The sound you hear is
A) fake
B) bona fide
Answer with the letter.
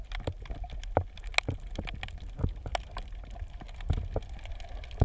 B